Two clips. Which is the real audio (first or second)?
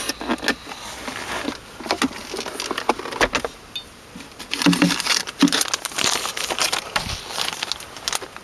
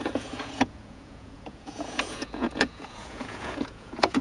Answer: first